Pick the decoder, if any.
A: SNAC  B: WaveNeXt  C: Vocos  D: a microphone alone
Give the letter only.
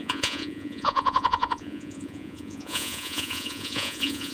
C